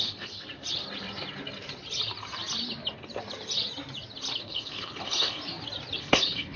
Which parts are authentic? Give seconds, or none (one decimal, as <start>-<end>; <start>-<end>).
0.4-4.4; 5.4-6.0